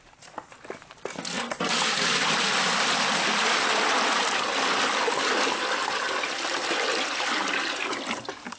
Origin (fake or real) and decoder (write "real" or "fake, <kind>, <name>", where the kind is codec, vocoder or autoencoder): real